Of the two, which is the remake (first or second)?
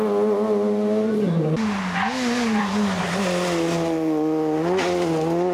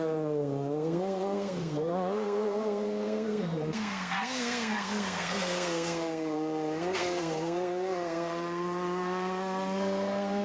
second